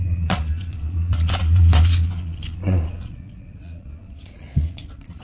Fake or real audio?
fake